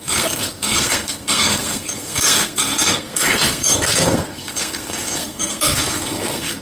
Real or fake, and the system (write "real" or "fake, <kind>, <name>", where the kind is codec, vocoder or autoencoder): fake, codec, SNAC